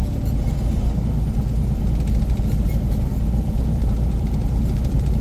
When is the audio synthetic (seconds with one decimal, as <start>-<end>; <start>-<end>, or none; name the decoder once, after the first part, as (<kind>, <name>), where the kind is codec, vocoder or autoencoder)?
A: 2.0-5.2 (vocoder, BigVGAN v2)

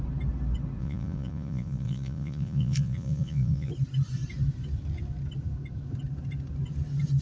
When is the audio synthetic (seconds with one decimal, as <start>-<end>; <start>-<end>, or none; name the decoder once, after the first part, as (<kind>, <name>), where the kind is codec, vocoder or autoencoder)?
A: 0.8-3.7 (vocoder, Vocos)

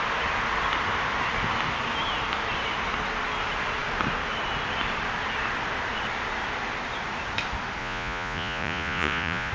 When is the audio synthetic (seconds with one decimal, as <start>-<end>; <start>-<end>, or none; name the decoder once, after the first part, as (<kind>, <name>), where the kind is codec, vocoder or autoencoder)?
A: 7.8-9.5 (vocoder, Vocos)

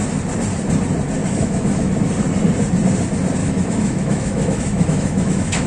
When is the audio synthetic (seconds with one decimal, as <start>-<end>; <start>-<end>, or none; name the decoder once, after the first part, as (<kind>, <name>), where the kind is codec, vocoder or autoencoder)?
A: 1.2-1.9 (autoencoder, DAC-VAE); 3.4-5.7

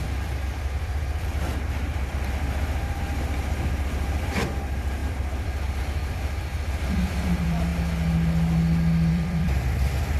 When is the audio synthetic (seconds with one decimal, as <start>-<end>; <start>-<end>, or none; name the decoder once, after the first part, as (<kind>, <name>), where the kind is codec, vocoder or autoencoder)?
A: 0.0-1.5 (vocoder, BigVGAN v2); 2.1-7.7; 9.1-10.2